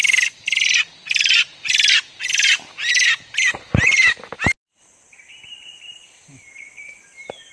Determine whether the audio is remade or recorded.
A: recorded